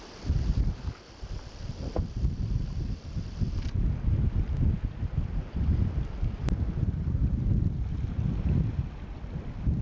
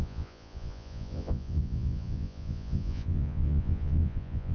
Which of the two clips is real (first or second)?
first